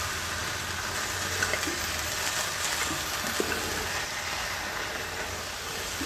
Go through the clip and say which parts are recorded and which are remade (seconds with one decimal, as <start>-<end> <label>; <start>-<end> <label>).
0.0-6.1 recorded